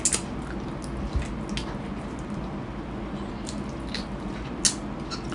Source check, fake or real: real